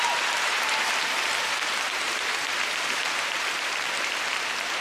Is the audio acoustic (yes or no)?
no